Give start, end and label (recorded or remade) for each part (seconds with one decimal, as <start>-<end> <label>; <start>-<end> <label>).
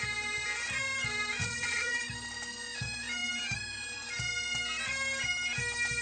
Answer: 0.0-1.4 recorded; 1.4-2.0 remade; 2.0-6.0 recorded